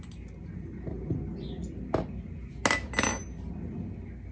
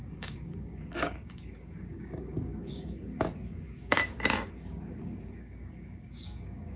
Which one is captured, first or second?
first